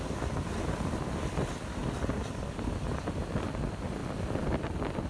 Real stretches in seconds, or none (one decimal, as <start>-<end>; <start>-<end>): 0.0-1.8; 2.5-4.0